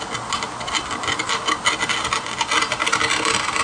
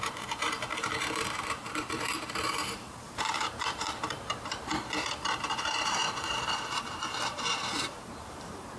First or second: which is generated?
second